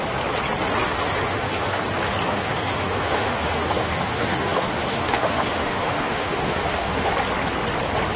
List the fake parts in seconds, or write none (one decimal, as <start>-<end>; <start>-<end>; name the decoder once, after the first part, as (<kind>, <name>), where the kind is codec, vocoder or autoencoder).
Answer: 0.8-1.8 (autoencoder, DAC-VAE); 2.3-7.1